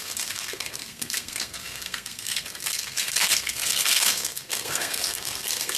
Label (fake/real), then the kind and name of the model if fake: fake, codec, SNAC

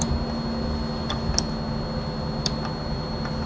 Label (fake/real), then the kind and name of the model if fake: real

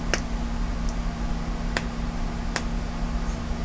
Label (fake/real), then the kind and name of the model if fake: real